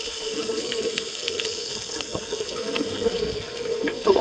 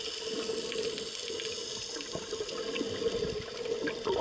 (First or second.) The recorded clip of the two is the second